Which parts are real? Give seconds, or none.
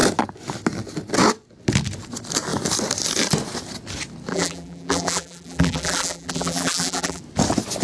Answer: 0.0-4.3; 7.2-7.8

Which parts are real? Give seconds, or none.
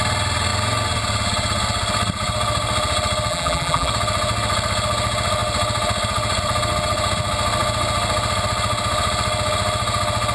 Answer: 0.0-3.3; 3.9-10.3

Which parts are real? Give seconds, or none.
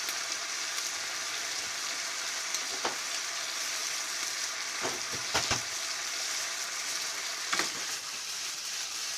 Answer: 0.4-2.1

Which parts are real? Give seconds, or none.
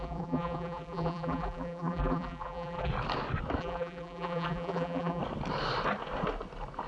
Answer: 2.9-3.6; 5.2-6.9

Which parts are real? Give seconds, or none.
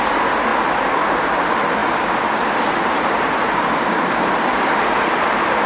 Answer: 0.5-1.1; 1.8-2.7